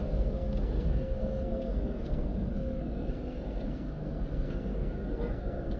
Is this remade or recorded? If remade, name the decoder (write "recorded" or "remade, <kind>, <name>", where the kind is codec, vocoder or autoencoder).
remade, codec, SNAC